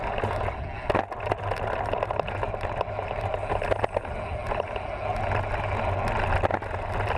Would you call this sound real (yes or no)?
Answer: yes